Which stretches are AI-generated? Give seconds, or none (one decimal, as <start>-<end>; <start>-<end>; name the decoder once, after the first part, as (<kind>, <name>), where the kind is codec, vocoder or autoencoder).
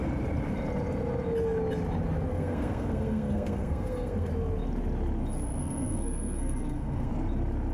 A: 2.3-4.3 (codec, SNAC); 5.6-7.1